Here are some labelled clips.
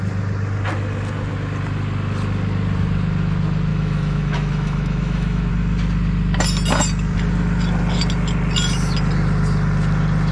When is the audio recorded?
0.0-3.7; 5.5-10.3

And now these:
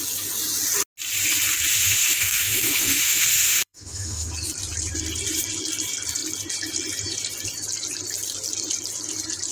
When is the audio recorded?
0.0-1.7; 4.3-9.5

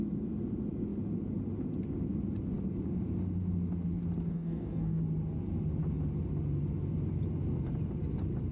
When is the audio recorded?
0.0-4.3; 5.0-8.5

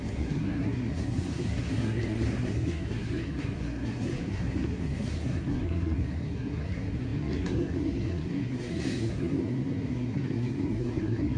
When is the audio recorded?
none

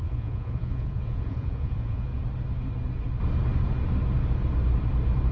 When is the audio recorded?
2.1-5.3